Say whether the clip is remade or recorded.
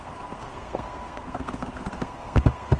remade